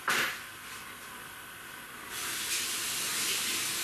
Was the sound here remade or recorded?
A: recorded